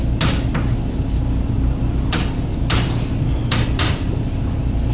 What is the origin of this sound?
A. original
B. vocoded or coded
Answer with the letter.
A